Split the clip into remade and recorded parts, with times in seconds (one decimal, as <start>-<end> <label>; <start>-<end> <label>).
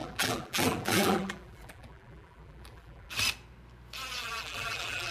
0.0-3.1 remade; 3.1-4.2 recorded; 4.2-5.1 remade